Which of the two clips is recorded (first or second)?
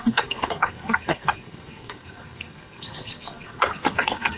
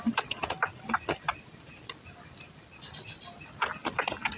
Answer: second